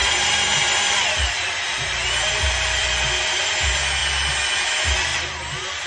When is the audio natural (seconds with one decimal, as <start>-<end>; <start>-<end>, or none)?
3.5-5.1